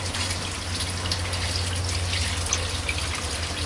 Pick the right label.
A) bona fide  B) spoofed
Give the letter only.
A